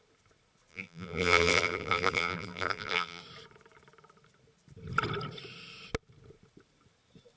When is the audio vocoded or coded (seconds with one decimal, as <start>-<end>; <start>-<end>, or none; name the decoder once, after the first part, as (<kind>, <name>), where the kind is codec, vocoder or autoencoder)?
0.7-3.2 (vocoder, BigVGAN v2)